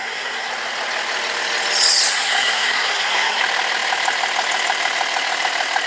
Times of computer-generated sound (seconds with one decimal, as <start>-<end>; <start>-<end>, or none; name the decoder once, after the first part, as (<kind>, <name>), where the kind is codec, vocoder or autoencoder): 0.0-0.5 (codec, SNAC); 2.1-3.4